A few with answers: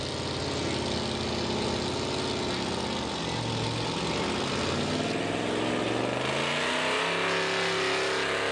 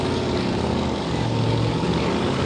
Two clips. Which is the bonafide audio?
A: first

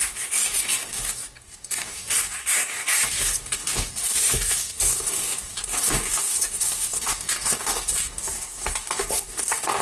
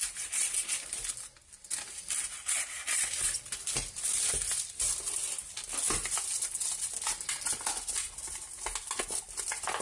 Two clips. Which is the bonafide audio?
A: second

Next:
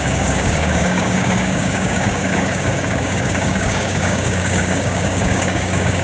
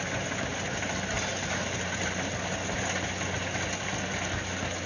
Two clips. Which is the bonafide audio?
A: second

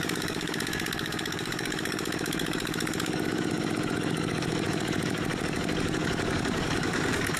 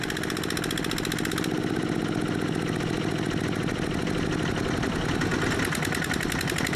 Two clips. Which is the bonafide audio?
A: second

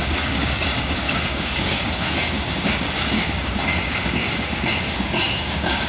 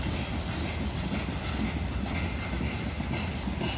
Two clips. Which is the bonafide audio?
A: second